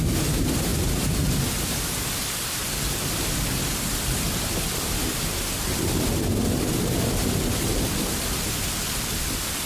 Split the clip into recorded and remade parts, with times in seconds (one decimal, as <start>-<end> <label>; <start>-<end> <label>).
0.0-0.7 recorded; 0.7-2.1 remade; 2.1-9.7 recorded